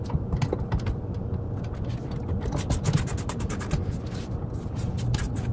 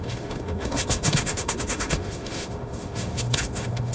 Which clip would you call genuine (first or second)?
first